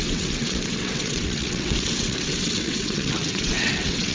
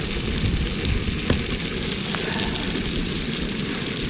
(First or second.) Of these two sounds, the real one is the second